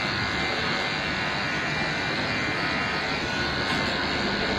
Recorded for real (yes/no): yes